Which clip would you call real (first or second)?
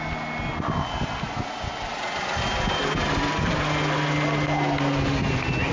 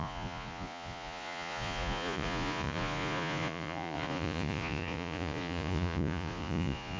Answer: first